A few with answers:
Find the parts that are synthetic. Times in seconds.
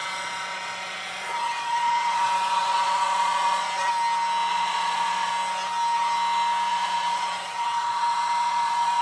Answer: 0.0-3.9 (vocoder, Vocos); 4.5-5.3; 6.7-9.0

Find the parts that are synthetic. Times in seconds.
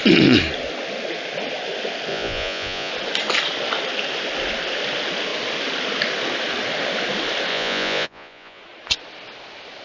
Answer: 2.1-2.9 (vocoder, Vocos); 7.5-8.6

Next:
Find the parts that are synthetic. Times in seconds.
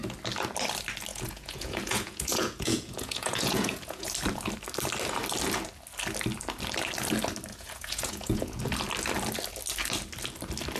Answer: 1.1-4.1 (vocoder, Vocos); 7.5-8.6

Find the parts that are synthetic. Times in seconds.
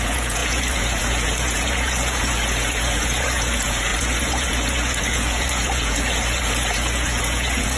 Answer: 0.0-7.8 (vocoder, Vocos)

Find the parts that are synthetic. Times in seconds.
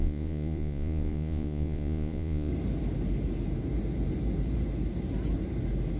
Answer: 0.0-2.5 (vocoder, Vocos)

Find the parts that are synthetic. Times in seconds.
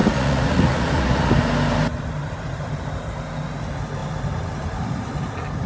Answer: 0.0-1.3 (vocoder, Vocos)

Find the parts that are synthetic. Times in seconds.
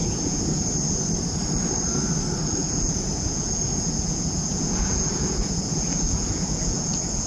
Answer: 0.0-0.7 (vocoder, Vocos); 2.6-7.3